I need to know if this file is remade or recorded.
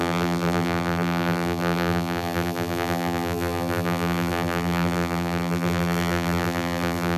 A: remade